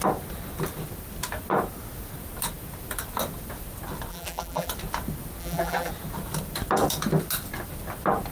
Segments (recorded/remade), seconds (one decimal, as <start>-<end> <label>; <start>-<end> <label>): 0.0-4.1 recorded; 4.1-4.7 remade; 4.7-5.4 recorded; 5.4-5.9 remade; 5.9-8.3 recorded